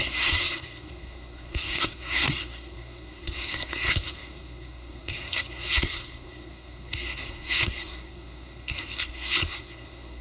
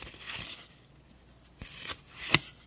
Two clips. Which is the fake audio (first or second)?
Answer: first